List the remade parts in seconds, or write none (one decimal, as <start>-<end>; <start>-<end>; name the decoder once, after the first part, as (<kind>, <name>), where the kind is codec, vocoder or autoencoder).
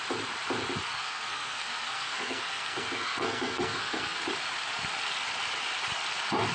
0.9-4.2 (codec, SNAC)